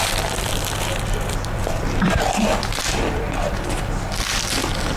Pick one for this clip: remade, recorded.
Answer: remade